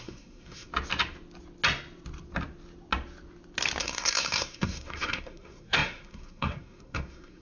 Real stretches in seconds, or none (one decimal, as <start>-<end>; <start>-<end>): 0.7-3.8